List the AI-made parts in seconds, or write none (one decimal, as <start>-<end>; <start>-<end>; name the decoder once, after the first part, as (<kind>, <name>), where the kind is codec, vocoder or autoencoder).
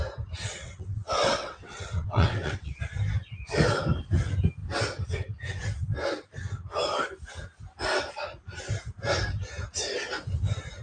0.6-2.8 (vocoder, WaveNeXt)